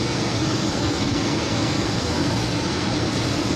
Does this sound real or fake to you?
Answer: fake